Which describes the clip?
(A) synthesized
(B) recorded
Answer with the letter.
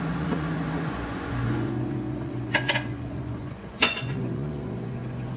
A